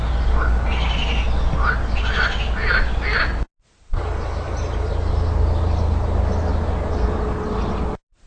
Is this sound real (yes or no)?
yes